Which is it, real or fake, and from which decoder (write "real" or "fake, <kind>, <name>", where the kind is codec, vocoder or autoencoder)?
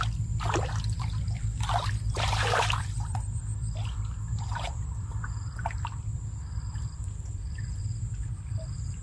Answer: fake, vocoder, BigVGAN v2